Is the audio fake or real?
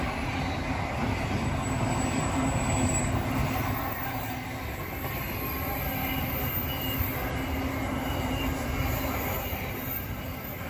real